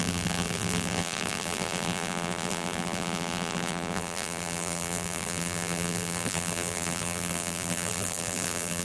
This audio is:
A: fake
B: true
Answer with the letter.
A